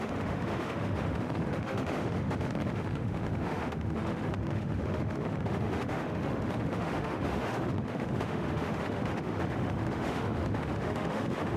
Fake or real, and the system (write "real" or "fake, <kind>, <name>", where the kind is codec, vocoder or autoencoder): fake, autoencoder, DAC-VAE